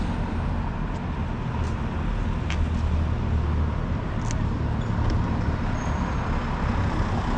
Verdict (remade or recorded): recorded